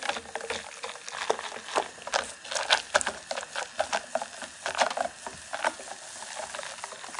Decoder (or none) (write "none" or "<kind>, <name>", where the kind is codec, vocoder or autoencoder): none